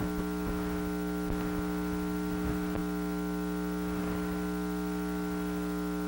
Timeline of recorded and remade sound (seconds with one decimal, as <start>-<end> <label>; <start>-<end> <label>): 0.0-6.1 recorded